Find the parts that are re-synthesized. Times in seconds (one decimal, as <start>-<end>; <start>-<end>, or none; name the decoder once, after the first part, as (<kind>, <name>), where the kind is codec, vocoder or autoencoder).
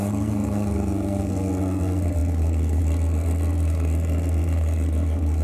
0.0-5.4 (codec, SNAC)